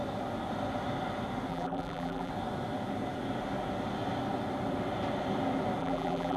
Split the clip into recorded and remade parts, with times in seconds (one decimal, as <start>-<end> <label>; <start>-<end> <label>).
0.0-1.5 recorded; 1.5-2.3 remade; 2.3-5.8 recorded; 5.8-6.4 remade